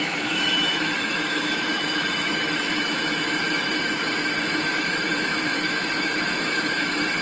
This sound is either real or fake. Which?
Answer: fake